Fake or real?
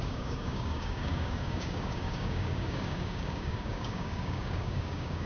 fake